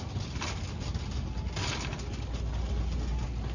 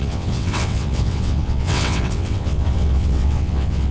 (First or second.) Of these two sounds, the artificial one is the second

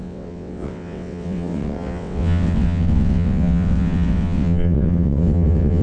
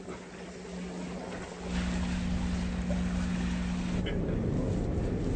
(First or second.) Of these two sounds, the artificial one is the first